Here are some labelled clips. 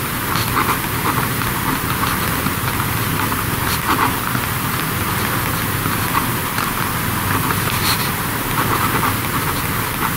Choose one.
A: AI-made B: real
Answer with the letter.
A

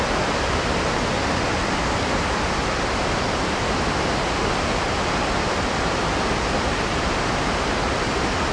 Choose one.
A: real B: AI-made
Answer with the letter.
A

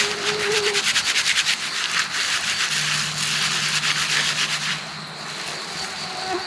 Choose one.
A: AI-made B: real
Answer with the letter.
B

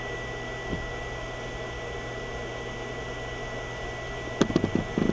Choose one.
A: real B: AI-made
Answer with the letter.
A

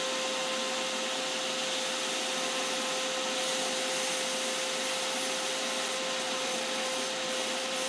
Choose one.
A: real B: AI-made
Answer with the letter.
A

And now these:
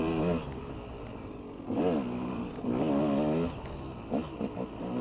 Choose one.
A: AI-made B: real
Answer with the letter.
B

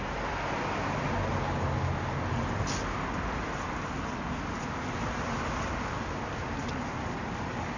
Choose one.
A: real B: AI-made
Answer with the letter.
A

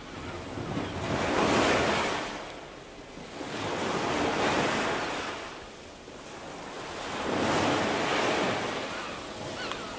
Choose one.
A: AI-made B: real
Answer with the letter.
B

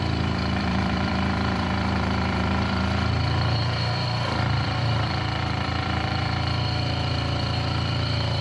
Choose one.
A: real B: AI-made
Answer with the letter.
B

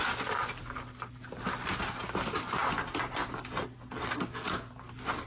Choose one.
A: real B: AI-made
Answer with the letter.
A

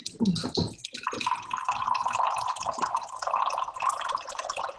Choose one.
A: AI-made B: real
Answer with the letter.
B